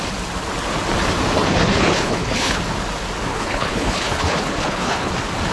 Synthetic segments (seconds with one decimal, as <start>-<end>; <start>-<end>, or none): 1.4-2.6; 3.3-5.1